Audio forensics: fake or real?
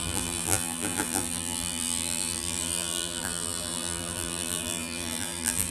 fake